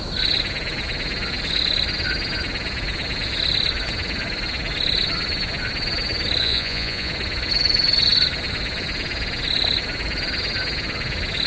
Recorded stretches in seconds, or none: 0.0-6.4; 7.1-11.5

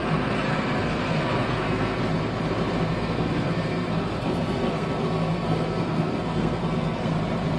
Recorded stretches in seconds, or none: 2.0-2.9; 7.1-7.6

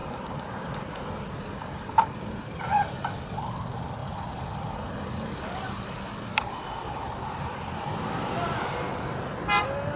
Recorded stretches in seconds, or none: 2.6-4.0; 7.8-10.0

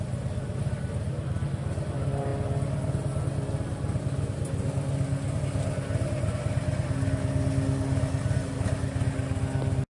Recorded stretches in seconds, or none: 0.0-9.9

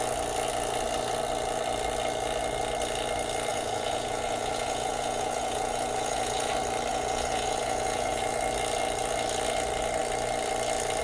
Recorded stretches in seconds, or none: 0.0-3.5; 6.5-6.9; 8.2-11.0

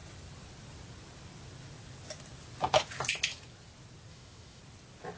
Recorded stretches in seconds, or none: 0.0-4.1; 4.6-5.2